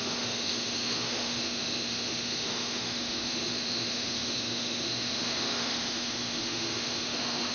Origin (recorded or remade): remade